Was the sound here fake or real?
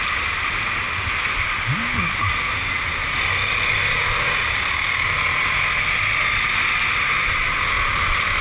real